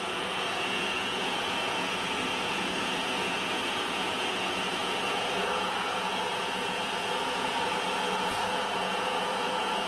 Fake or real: fake